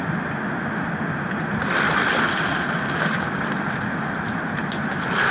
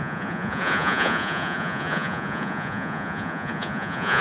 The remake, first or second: second